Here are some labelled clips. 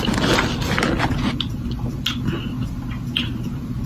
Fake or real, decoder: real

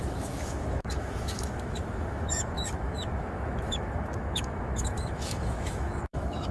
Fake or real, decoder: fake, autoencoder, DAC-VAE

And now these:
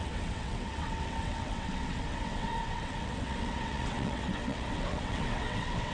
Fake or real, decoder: fake, vocoder, WaveNeXt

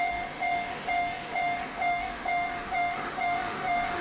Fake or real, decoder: fake, autoencoder, DAC-VAE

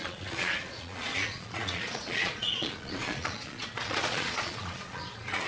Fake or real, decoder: fake, vocoder, Vocos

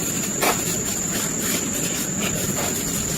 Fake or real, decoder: real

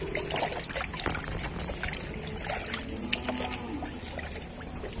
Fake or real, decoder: real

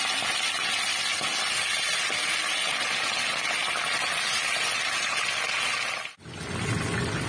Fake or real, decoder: real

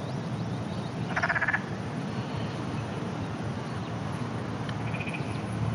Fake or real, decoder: real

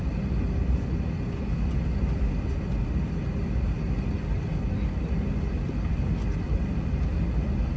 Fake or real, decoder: real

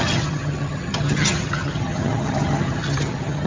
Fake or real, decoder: fake, vocoder, HiFi-GAN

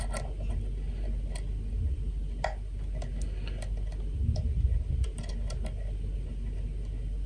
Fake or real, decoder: real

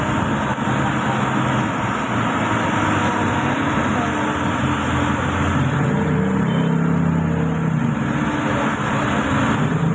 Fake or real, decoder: real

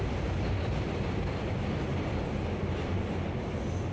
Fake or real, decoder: real